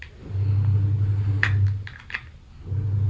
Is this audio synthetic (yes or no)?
no